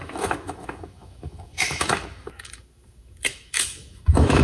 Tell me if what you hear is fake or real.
fake